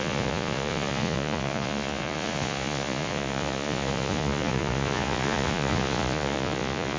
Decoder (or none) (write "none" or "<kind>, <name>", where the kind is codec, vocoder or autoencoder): vocoder, Vocos